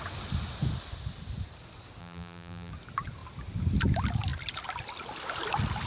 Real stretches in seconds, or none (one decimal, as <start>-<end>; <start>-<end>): 0.0-2.0; 2.7-5.9